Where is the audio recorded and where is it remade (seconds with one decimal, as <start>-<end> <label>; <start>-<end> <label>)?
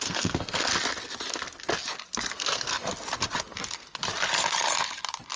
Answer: 0.0-0.7 remade; 0.7-2.3 recorded; 2.3-2.7 remade; 2.7-5.4 recorded